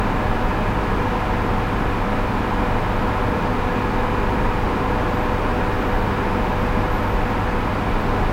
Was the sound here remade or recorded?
recorded